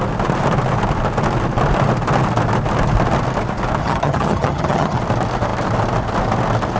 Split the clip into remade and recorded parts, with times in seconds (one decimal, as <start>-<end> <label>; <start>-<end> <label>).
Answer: 0.0-3.8 recorded; 3.8-5.0 remade; 5.0-6.8 recorded